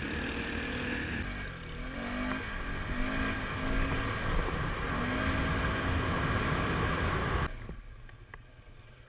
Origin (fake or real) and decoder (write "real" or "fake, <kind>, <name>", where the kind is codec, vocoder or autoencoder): real